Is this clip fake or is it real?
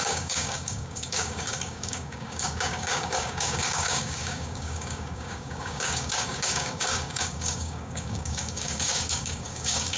fake